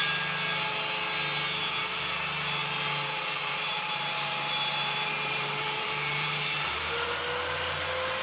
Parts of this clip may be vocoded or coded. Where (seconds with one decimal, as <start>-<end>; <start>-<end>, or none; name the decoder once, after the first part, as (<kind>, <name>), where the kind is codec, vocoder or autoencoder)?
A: 2.6-6.8 (vocoder, BigVGAN v2)